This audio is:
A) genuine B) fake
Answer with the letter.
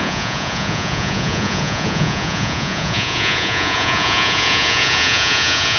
B